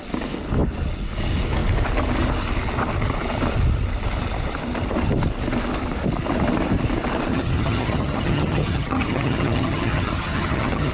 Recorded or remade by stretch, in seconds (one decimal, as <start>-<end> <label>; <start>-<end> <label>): 0.0-7.3 recorded; 7.3-10.9 remade